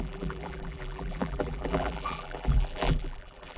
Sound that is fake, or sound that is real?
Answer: fake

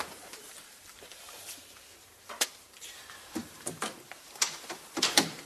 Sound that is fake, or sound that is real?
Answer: fake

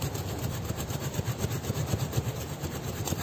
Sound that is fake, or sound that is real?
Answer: fake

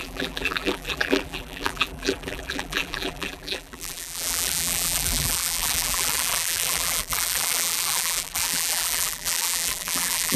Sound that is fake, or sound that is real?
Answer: fake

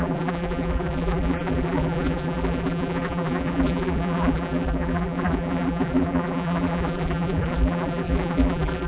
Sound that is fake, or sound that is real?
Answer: fake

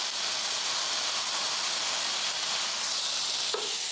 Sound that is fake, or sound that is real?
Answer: real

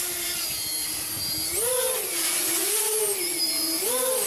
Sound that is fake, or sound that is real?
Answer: real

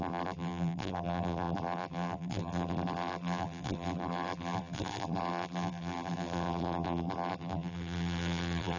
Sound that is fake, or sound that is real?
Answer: fake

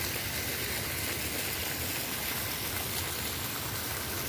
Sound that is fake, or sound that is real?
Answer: real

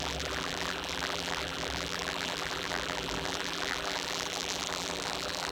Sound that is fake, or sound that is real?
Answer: fake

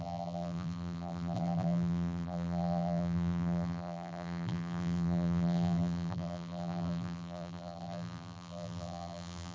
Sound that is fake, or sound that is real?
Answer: fake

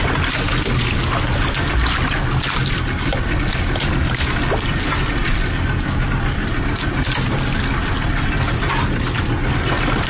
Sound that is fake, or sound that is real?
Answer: real